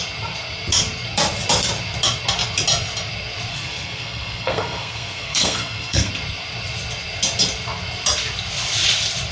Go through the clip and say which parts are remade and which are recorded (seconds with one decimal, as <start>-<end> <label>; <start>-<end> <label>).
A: 0.0-3.5 recorded; 3.5-6.1 remade; 6.1-9.3 recorded